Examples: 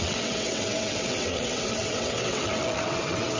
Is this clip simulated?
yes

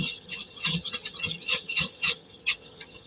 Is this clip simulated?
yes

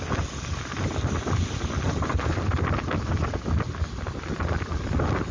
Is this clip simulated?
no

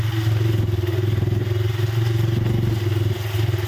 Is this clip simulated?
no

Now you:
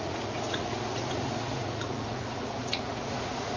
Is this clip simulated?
yes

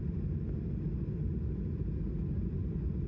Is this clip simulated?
no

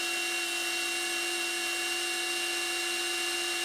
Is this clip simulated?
no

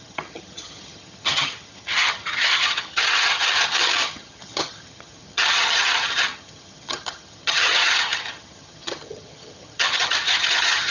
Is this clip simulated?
yes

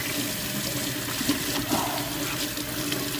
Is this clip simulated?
no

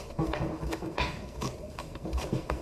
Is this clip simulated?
yes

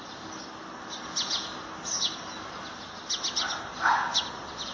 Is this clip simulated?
no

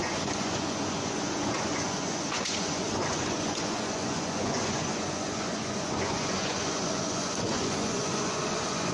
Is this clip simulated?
yes